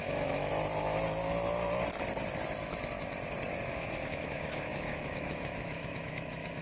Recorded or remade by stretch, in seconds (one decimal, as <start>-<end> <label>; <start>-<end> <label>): 0.0-0.5 remade; 0.5-3.7 recorded; 3.7-6.6 remade